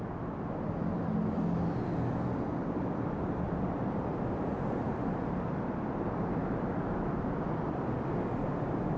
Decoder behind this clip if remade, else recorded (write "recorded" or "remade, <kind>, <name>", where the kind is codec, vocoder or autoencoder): recorded